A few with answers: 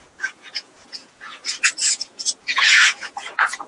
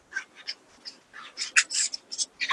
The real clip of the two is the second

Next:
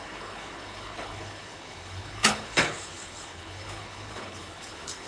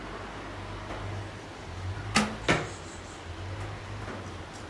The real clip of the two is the second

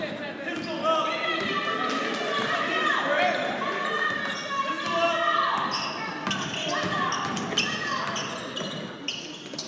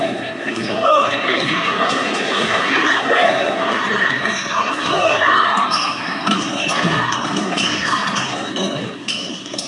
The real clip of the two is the first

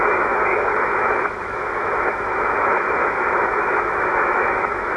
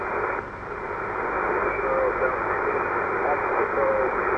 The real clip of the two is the second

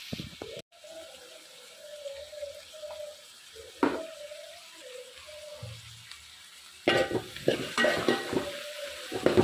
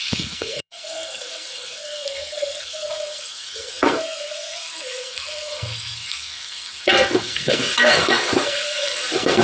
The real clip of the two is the first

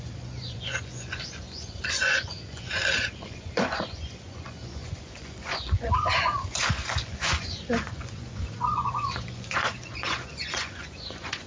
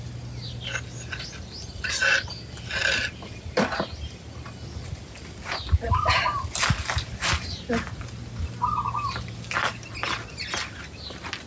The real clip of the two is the second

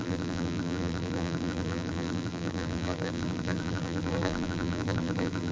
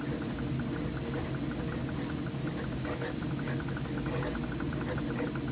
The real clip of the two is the second